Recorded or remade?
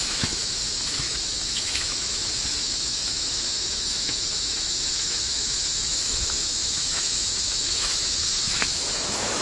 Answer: remade